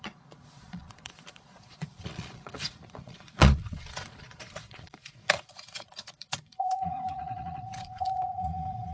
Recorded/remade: remade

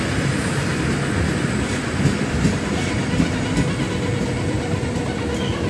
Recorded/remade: recorded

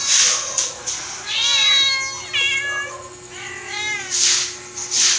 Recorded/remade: recorded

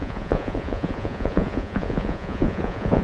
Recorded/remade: remade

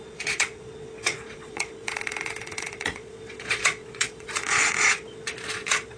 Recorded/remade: remade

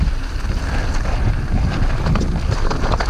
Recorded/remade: recorded